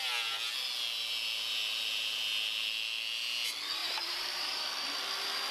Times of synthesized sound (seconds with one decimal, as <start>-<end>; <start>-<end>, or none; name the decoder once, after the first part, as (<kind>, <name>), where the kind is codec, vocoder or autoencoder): 3.8-4.7 (vocoder, BigVGAN v2)